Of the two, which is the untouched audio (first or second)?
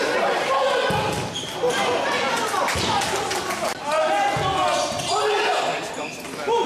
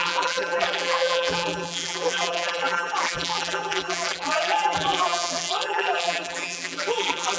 first